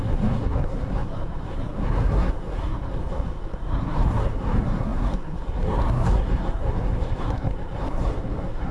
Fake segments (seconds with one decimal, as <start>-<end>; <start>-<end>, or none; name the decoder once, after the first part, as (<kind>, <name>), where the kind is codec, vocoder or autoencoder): 0.0-8.7 (codec, SNAC)